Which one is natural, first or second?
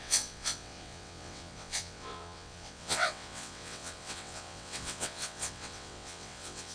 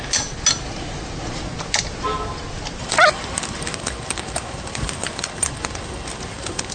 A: second